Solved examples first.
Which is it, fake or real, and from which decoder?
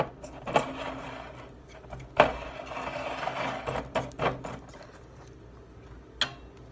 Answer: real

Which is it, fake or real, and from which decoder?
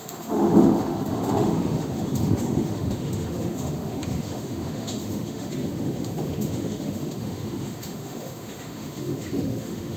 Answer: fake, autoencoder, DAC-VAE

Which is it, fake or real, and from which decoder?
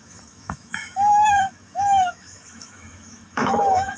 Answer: fake, autoencoder, DAC-VAE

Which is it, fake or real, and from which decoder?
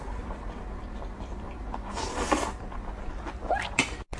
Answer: real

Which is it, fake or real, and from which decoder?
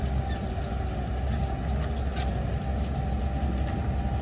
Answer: real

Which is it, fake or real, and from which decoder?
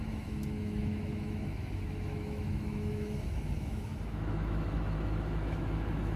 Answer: fake, autoencoder, DAC-VAE